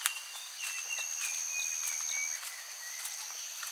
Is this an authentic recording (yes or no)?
yes